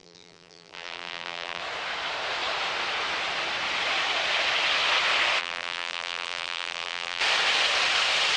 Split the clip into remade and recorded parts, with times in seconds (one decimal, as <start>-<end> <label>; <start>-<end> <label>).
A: 0.0-1.6 remade; 1.6-5.4 recorded; 5.4-7.2 remade; 7.2-8.4 recorded